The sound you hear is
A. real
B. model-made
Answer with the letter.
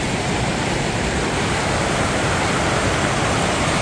A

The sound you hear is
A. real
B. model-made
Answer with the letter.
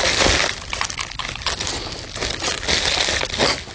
A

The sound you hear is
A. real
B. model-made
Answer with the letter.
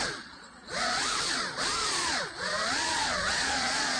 B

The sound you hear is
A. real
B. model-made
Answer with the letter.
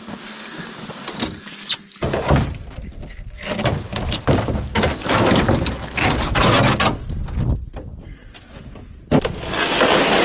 A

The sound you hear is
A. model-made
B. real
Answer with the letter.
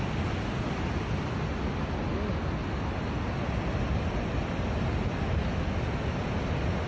B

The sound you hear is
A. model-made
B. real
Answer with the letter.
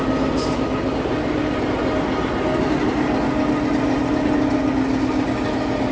B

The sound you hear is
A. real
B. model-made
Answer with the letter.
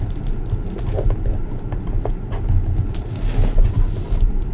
A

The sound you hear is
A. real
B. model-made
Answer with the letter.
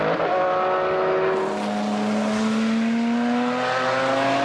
A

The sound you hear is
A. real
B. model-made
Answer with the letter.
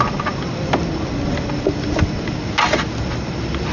A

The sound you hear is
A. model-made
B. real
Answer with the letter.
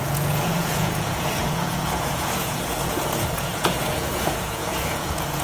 A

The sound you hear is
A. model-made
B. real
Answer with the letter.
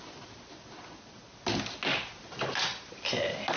B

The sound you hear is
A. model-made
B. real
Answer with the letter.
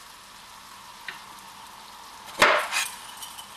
B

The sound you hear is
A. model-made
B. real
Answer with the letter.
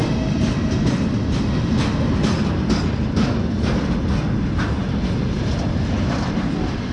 B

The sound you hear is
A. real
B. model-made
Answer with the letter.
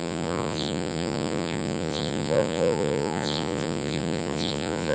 B